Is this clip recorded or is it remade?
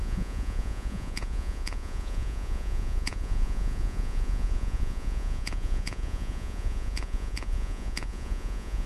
remade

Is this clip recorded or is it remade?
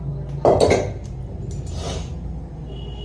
recorded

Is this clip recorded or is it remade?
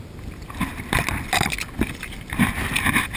recorded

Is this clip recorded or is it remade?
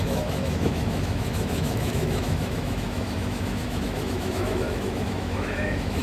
remade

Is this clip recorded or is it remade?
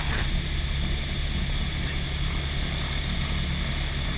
recorded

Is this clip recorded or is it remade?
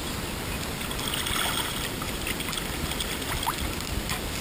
recorded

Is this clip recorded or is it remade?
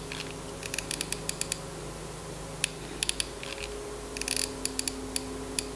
recorded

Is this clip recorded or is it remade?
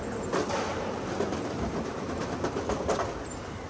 recorded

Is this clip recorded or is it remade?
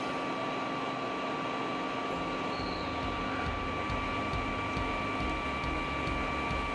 recorded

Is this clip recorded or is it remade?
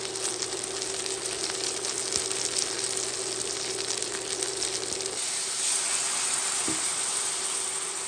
recorded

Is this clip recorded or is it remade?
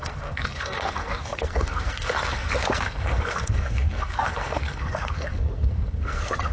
remade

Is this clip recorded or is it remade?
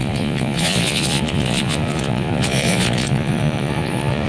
remade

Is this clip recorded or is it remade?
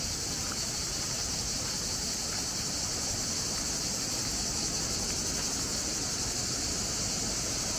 recorded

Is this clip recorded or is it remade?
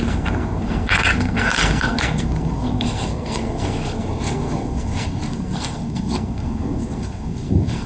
remade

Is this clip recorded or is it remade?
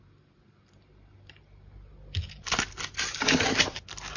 recorded